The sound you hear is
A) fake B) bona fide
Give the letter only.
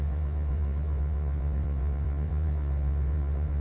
A